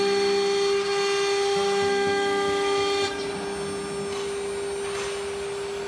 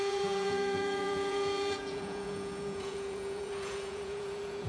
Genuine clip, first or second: first